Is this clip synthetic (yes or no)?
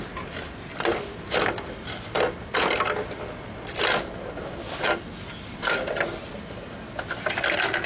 no